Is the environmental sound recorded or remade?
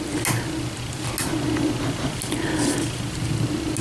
recorded